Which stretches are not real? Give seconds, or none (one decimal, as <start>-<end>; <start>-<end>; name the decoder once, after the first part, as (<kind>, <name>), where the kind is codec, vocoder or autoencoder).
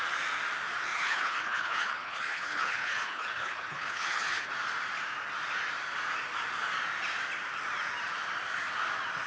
0.9-4.5 (codec, HILCodec)